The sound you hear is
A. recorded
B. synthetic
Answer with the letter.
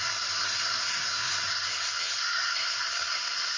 B